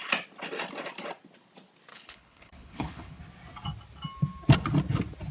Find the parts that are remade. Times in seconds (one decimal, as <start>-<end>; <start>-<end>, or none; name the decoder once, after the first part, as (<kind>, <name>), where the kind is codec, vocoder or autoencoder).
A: 1.9-3.2 (codec, HILCodec)